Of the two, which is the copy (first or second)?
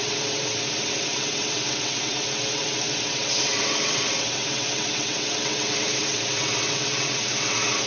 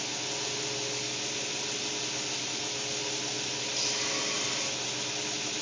first